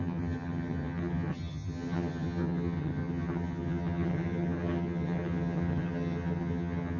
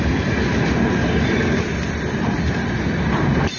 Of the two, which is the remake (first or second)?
first